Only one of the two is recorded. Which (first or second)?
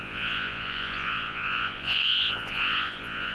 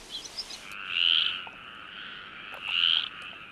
second